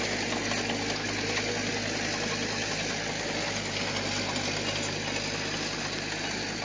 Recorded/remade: recorded